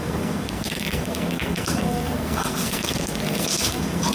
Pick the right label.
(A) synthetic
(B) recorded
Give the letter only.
A